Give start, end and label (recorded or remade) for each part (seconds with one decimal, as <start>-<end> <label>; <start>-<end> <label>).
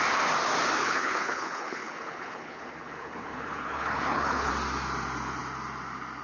0.0-0.8 recorded; 0.8-4.5 remade; 4.5-6.2 recorded